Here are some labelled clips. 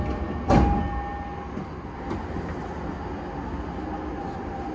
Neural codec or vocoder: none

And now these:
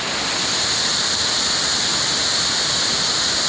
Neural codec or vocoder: none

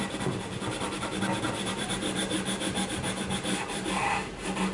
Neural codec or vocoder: vocoder, BigVGAN v2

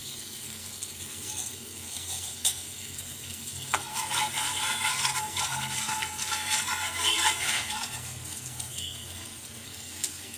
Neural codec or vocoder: codec, SNAC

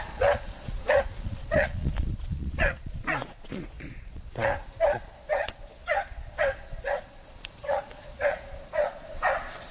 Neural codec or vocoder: vocoder, Vocos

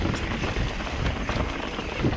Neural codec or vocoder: none